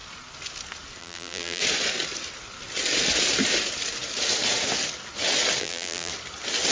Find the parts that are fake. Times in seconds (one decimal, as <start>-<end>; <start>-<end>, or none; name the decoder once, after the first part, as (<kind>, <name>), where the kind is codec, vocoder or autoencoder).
1.0-1.6 (vocoder, BigVGAN v2); 5.6-6.1